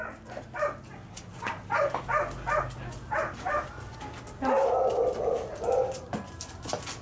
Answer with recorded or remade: recorded